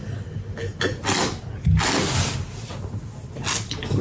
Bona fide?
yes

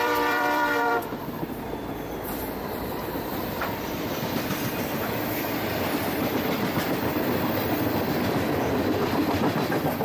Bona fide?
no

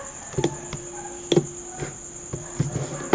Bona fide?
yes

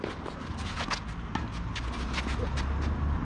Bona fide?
yes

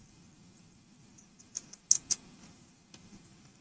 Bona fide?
yes